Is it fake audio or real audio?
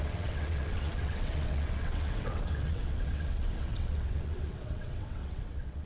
fake